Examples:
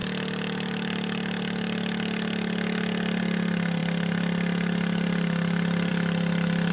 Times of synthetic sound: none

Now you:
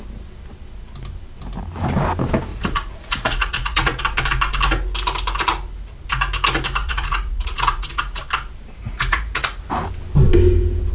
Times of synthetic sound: 2.5-4.0 (vocoder, Vocos); 6.8-8.2; 8.8-9.6

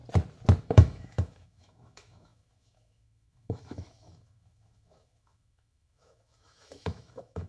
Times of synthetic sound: 0.6-7.5 (autoencoder, DAC-VAE)

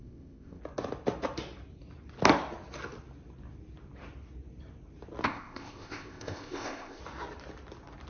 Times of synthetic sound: 0.0-0.6 (codec, ZipCodec); 5.2-7.0

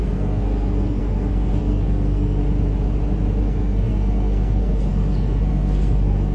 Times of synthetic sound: 0.0-2.4 (codec, SNAC); 3.4-6.3

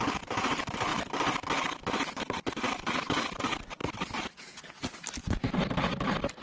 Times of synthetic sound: 0.9-3.4 (vocoder, BigVGAN v2)

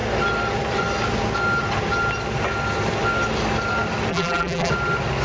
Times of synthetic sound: 4.1-4.7 (vocoder, BigVGAN v2)